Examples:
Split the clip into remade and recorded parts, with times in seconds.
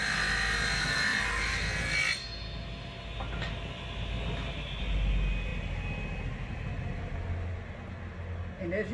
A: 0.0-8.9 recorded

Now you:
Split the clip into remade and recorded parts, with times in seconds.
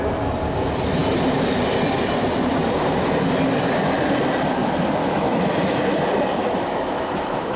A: 0.0-5.0 recorded; 5.0-5.8 remade; 5.8-6.4 recorded; 6.4-7.6 remade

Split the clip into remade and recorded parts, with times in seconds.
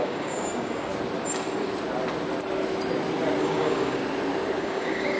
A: 0.0-0.9 remade; 0.9-3.4 recorded; 3.4-4.0 remade; 4.0-4.6 recorded; 4.6-5.2 remade